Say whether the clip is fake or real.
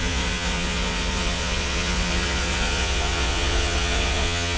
fake